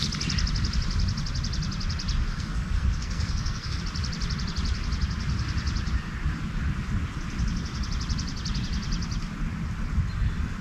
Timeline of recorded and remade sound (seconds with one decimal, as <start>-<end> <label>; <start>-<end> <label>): 0.0-2.3 recorded; 2.3-3.8 remade; 3.8-10.6 recorded